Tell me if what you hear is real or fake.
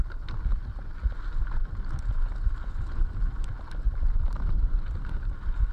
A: real